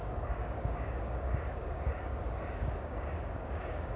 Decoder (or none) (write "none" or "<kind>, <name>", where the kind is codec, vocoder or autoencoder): codec, DAC